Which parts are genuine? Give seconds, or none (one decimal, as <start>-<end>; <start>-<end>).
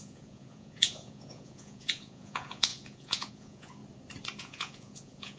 3.8-4.4